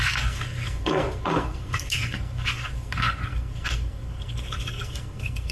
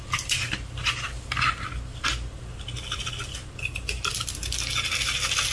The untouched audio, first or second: second